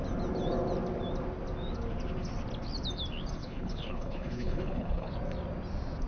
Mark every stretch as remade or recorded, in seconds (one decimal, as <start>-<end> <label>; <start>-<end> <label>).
0.0-3.4 recorded; 3.4-5.1 remade; 5.1-6.1 recorded